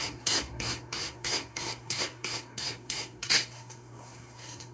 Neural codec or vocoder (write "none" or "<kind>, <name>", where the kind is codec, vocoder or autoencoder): codec, SNAC